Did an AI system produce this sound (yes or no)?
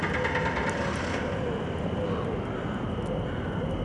no